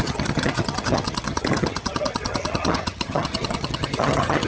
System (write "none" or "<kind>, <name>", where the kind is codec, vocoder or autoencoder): vocoder, HiFi-GAN